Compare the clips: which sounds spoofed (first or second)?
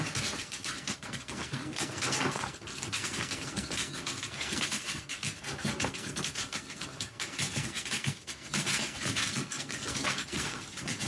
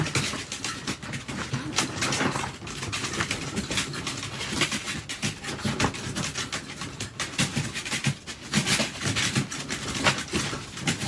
first